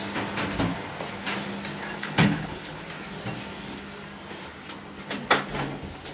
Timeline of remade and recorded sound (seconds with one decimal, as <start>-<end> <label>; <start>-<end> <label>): 0.0-2.0 recorded; 2.0-2.8 remade; 2.8-6.1 recorded